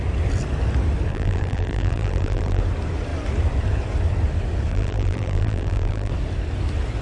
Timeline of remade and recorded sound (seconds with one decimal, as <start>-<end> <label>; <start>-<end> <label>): 0.0-1.1 recorded; 1.1-2.6 remade; 2.6-4.7 recorded; 4.7-6.1 remade; 6.1-7.0 recorded